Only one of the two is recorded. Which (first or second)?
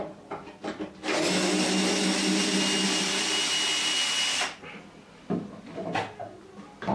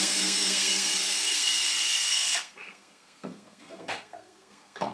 first